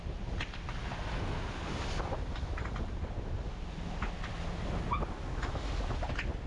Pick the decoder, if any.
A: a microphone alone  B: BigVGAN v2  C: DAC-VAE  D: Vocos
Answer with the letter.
A